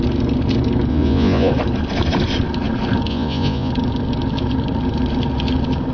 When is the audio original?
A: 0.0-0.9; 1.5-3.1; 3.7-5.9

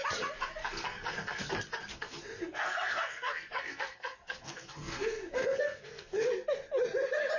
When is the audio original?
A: 0.0-0.6; 1.5-1.9; 6.3-7.4

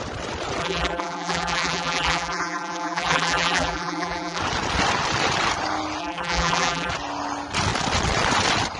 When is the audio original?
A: 0.0-0.6; 4.4-6.0; 6.9-8.8

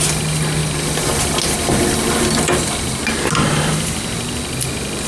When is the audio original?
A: 0.0-5.1

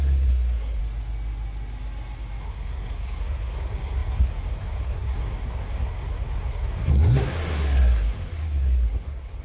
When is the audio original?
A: 0.8-2.4

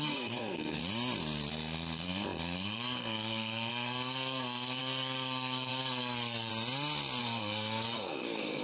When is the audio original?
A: 0.8-1.5; 6.5-7.2

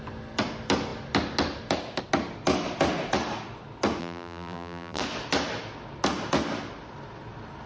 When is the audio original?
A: 0.0-4.0; 5.0-7.7

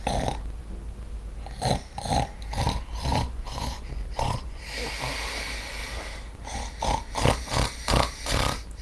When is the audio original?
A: 0.0-3.1; 4.6-8.8